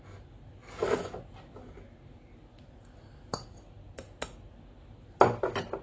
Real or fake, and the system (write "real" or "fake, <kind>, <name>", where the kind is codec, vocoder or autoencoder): real